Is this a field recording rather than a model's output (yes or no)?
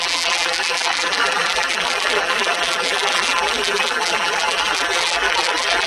no